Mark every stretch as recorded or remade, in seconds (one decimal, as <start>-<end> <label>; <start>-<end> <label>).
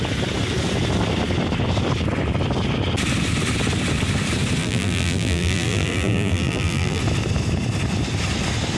0.0-4.6 recorded; 4.6-7.0 remade; 7.0-8.8 recorded